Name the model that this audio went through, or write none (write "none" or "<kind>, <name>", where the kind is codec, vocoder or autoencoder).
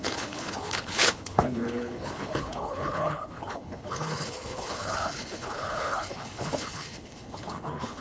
codec, HILCodec